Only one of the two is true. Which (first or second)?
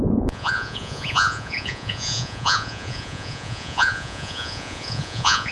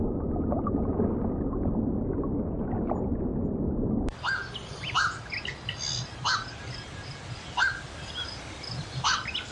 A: second